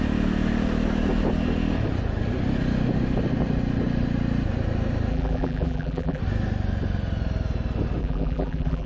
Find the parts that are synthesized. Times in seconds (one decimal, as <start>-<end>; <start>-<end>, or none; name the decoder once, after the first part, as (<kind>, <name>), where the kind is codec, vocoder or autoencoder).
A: 5.1-6.2 (vocoder, BigVGAN v2); 8.0-8.9